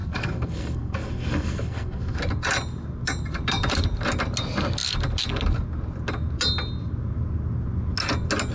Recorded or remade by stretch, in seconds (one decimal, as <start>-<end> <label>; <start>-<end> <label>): 0.0-2.2 remade; 2.2-8.5 recorded